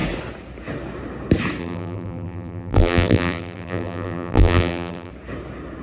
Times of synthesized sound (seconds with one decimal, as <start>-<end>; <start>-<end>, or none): 1.6-5.1